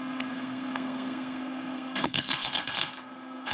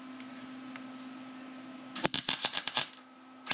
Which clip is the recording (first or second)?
second